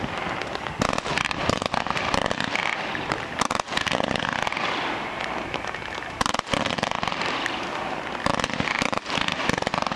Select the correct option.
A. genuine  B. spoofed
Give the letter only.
A